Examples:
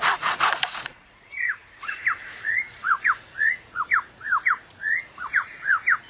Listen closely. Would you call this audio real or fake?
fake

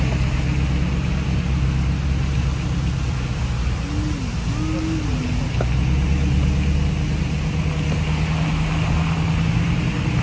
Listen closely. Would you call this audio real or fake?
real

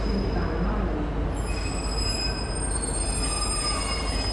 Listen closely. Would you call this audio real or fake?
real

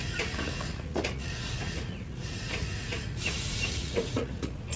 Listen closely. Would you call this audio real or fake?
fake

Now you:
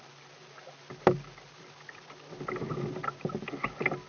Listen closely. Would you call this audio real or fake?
real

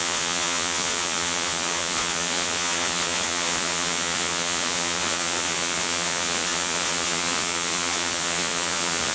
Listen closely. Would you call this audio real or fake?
fake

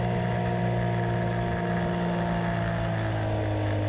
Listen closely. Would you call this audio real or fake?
real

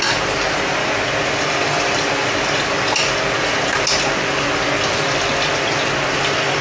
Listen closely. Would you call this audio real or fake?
real